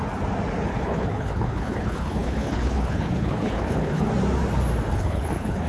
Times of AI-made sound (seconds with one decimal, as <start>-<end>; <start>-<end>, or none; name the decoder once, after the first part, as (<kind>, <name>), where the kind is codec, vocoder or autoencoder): 0.7-4.1 (codec, HILCodec); 4.9-5.7

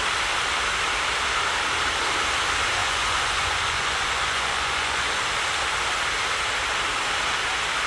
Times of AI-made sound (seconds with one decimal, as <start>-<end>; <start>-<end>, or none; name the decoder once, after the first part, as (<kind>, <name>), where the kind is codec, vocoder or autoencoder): 2.8-5.2 (vocoder, Vocos)